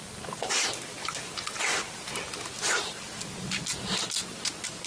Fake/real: real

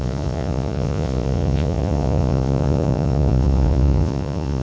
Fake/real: fake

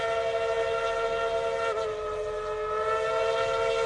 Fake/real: real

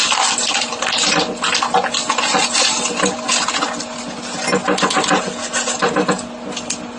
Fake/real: real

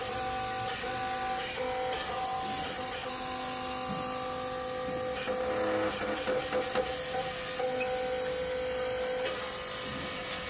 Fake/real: real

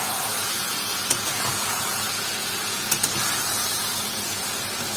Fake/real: fake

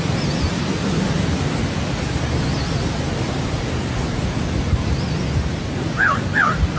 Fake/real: real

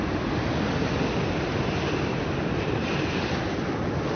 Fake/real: real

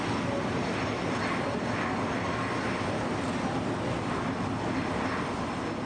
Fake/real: real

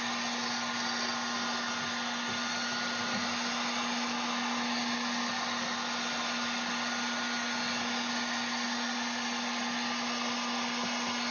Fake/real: real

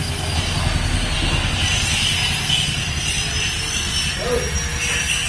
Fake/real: real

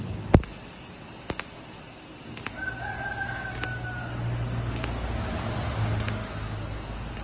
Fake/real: real